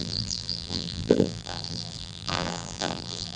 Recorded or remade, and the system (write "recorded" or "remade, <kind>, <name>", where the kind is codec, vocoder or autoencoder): remade, vocoder, BigVGAN v2